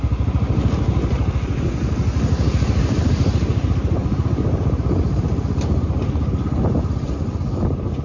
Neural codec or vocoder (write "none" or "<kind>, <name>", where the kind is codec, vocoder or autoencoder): none